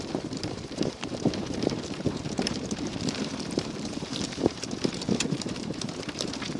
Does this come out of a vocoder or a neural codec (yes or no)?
yes